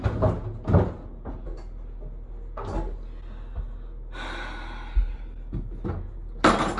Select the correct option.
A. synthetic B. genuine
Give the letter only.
B